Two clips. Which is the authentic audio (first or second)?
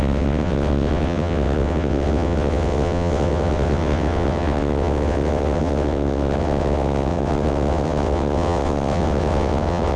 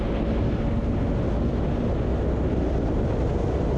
second